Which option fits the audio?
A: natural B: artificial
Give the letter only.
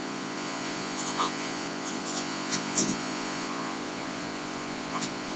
B